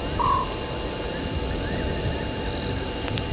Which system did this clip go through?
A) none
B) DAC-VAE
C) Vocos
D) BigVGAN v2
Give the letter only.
A